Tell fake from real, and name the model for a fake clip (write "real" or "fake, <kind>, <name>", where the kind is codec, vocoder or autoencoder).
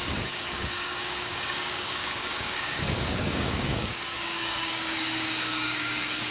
fake, codec, DAC